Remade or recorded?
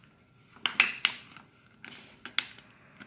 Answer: recorded